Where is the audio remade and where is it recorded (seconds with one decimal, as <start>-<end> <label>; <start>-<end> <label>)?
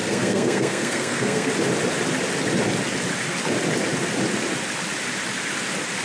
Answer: 0.0-1.5 remade; 1.5-6.0 recorded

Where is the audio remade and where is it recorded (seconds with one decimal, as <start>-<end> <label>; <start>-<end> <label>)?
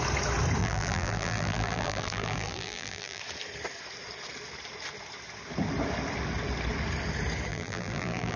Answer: 0.0-0.6 recorded; 0.6-3.2 remade; 3.2-7.5 recorded; 7.5-8.4 remade